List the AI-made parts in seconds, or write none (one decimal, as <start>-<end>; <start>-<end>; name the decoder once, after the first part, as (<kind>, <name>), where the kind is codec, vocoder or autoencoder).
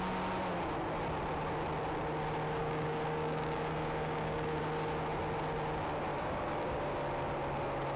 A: 2.6-4.6 (codec, DAC); 6.1-6.8